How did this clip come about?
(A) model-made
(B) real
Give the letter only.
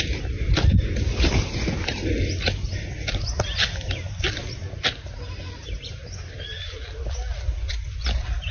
B